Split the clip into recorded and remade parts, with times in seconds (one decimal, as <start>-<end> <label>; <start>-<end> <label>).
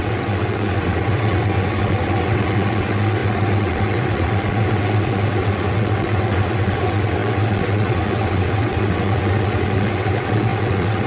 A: 0.0-11.1 remade